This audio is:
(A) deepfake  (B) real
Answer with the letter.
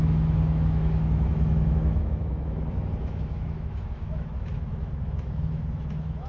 A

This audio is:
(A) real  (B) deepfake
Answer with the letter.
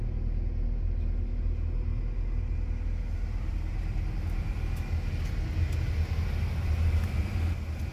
A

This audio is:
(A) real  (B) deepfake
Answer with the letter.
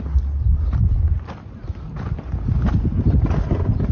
A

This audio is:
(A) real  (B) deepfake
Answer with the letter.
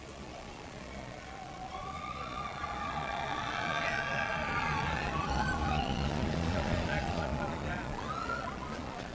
B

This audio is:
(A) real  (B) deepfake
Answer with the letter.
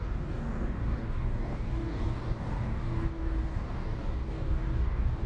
B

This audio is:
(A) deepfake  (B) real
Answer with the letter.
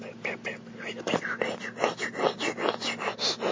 B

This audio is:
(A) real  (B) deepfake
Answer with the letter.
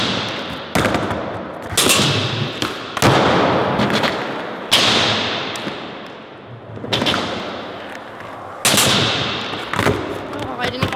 A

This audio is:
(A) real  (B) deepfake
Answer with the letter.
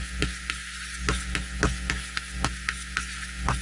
A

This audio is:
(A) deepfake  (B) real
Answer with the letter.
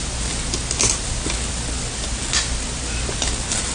B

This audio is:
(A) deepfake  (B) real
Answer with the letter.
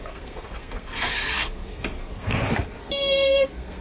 A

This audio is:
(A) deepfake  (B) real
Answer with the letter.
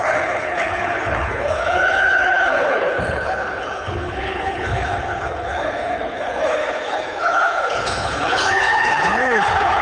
A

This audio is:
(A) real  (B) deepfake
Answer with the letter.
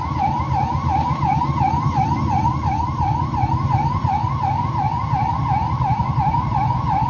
A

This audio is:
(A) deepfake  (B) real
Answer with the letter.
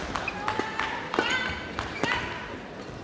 B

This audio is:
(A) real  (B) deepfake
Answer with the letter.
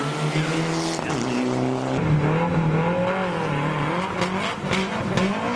A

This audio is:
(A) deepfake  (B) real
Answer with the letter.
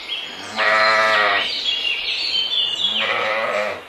B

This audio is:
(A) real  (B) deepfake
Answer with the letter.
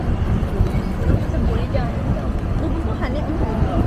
B